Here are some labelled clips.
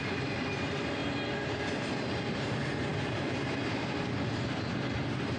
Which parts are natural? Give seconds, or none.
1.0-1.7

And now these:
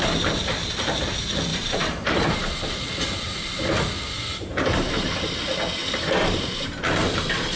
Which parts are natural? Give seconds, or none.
0.0-1.5; 2.5-4.3; 5.1-5.8; 6.8-7.6